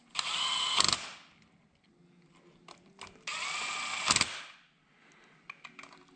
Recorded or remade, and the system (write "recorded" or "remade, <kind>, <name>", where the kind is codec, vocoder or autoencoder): recorded